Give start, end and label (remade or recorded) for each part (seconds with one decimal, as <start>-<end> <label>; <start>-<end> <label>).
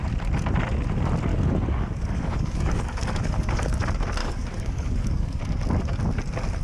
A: 0.0-1.3 recorded; 1.3-3.8 remade; 3.8-4.2 recorded; 4.2-5.4 remade; 5.4-6.6 recorded